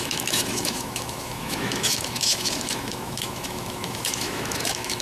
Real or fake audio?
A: fake